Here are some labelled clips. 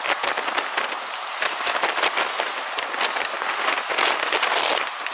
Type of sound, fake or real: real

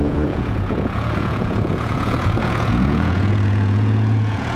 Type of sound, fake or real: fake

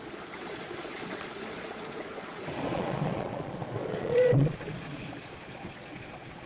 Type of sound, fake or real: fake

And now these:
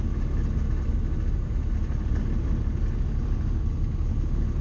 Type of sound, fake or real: real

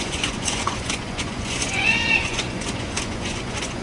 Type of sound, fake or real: fake